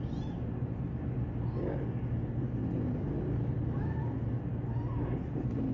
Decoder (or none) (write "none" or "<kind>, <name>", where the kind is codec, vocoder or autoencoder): none